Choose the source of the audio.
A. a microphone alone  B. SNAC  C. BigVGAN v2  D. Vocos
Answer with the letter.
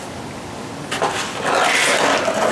A